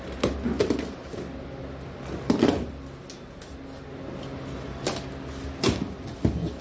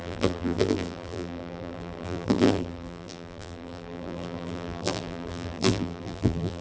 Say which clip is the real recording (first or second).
first